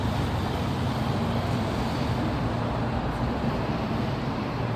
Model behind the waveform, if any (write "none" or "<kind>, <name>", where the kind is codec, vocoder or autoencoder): none